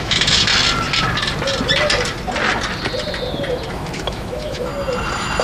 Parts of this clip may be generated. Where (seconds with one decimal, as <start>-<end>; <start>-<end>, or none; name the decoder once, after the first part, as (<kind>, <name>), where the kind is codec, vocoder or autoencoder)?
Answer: 0.0-0.5 (autoencoder, DAC-VAE); 3.7-4.7